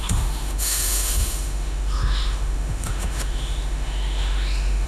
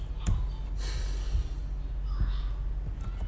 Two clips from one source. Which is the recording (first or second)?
second